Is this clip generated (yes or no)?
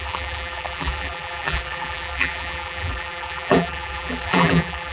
yes